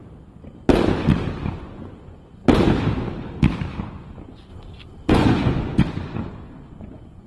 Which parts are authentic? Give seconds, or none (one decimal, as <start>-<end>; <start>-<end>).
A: 0.0-1.4; 2.4-3.8; 4.5-5.1